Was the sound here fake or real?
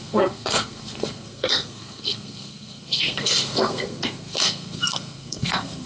fake